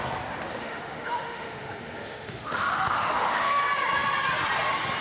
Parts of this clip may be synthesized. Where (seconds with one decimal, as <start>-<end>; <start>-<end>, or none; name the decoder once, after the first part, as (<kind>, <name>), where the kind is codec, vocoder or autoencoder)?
0.6-3.6 (autoencoder, DAC-VAE)